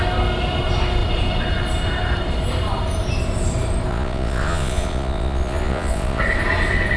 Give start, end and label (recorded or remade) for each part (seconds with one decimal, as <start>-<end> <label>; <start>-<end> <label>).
0.0-3.9 recorded; 3.9-6.2 remade; 6.2-7.0 recorded